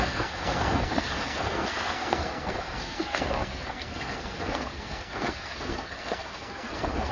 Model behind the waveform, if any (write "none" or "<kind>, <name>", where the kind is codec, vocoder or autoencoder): codec, SNAC